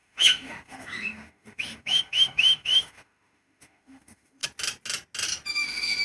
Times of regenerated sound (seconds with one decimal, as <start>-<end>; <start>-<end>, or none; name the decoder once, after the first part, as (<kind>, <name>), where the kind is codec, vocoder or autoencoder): 0.0-4.4 (autoencoder, DAC-VAE); 5.5-6.0